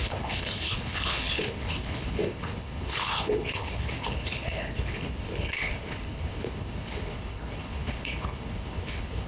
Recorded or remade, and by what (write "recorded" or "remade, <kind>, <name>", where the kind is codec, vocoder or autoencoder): remade, codec, HILCodec